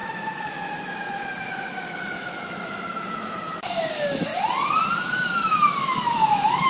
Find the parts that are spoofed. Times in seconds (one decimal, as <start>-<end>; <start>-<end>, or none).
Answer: 0.0-4.3; 5.0-6.7